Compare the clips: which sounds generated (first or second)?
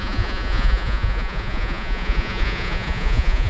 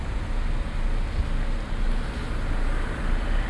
first